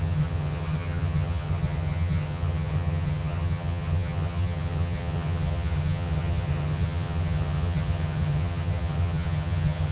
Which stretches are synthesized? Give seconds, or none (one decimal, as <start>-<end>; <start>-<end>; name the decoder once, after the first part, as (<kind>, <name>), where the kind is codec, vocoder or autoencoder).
0.0-9.9 (vocoder, HiFi-GAN)

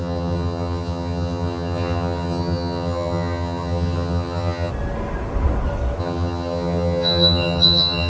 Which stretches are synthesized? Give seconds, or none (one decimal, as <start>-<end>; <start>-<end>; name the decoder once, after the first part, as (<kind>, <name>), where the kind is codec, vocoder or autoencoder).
0.0-4.7 (vocoder, HiFi-GAN); 6.0-8.1